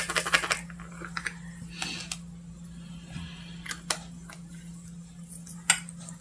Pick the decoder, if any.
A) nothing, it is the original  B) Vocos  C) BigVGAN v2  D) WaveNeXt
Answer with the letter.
A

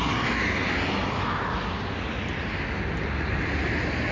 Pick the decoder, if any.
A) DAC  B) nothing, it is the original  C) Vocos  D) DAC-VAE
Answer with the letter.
B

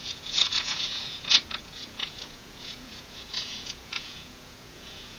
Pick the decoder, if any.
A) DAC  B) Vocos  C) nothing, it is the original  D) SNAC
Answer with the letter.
B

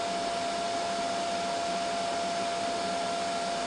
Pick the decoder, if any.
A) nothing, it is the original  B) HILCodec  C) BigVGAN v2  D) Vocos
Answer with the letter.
A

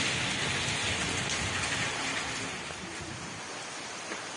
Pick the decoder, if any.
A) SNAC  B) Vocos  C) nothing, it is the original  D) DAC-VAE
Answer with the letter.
C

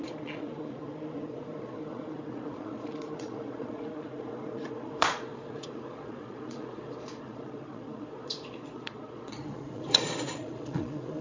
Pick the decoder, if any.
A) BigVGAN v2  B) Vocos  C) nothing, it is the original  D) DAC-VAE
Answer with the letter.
B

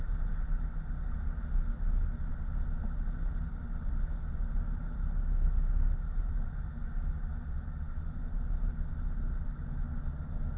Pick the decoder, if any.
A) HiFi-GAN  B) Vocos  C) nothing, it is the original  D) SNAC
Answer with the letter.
C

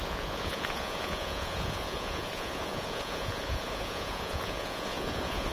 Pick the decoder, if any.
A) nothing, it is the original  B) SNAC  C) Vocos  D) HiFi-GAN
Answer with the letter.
C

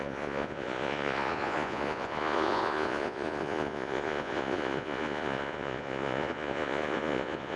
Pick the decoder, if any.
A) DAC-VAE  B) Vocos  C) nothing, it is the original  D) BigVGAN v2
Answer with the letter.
B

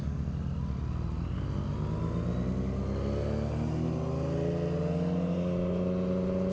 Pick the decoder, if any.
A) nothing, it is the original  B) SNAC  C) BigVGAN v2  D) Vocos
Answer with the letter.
A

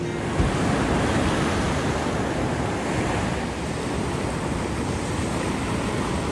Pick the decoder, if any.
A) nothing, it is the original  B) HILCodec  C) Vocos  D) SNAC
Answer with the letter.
A